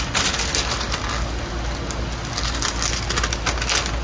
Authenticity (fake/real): real